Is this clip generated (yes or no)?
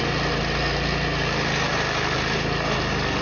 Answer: no